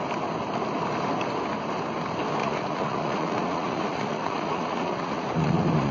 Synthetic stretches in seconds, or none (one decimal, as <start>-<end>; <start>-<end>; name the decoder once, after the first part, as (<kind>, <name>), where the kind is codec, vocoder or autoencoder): 2.4-5.9 (vocoder, Vocos)